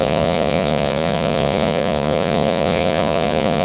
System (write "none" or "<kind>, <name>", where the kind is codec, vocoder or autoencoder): vocoder, Vocos